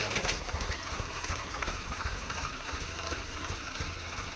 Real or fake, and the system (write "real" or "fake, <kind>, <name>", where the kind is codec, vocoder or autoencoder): fake, codec, SNAC